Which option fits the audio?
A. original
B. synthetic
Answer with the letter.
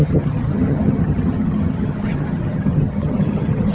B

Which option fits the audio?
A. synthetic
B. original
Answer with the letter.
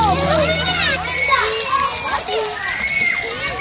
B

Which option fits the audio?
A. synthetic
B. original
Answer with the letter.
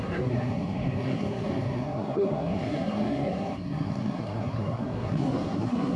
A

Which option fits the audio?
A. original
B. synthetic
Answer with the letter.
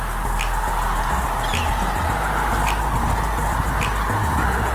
A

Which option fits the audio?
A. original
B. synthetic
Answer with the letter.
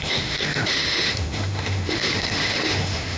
B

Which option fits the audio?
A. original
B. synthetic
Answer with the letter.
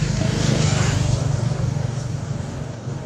B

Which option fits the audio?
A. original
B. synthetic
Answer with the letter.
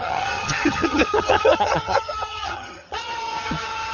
B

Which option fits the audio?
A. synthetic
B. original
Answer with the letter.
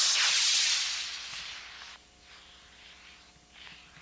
B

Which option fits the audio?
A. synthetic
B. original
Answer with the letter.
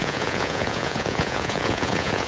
A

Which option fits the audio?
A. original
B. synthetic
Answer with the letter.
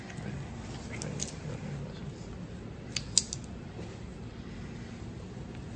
A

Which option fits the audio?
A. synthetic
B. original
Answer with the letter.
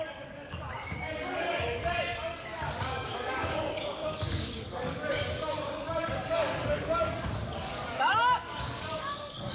A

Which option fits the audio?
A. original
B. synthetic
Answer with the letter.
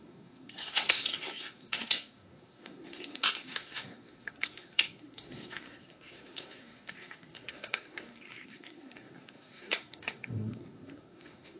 B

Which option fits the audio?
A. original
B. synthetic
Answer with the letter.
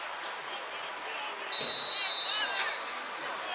A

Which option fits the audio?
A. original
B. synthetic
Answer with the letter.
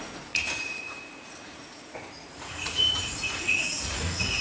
B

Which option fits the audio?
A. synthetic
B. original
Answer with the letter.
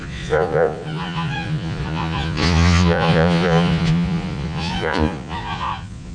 A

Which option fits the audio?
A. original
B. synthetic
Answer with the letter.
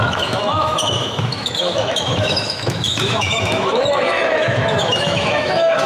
B